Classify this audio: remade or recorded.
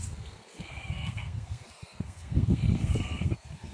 remade